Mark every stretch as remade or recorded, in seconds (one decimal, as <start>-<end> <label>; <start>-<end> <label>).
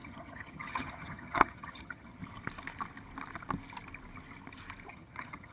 0.0-2.2 remade; 2.2-4.9 recorded; 4.9-5.5 remade